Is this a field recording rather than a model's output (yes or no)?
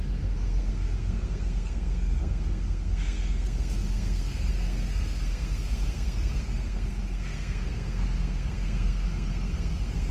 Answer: no